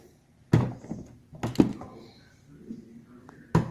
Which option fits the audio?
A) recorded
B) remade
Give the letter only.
A